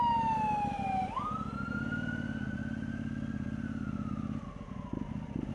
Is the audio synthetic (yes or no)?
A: no